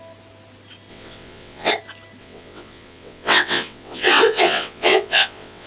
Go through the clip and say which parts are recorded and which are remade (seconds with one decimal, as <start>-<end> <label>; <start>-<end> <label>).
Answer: 0.0-0.9 recorded; 0.9-1.7 remade; 1.7-2.2 recorded; 2.2-5.7 remade